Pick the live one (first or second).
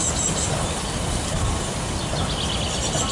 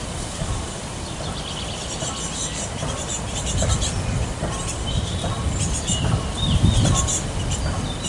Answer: first